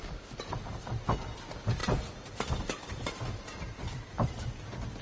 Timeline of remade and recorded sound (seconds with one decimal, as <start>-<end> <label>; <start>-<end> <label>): 0.0-5.0 recorded

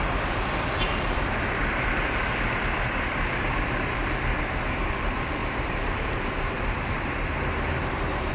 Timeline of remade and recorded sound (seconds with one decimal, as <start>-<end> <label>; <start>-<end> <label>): 0.0-1.6 remade; 1.6-3.1 recorded; 3.1-4.3 remade; 4.3-4.9 recorded; 4.9-8.3 remade

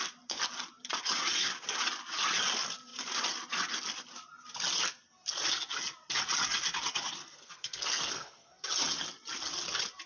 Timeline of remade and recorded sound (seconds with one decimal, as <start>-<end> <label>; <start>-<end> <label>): 0.0-7.2 recorded; 7.2-8.6 remade; 8.6-10.1 recorded

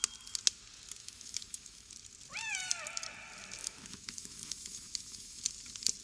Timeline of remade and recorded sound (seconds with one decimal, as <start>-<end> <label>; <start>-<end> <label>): 0.0-1.0 recorded; 1.0-1.9 remade; 1.9-3.6 recorded; 3.6-5.4 remade; 5.4-6.0 recorded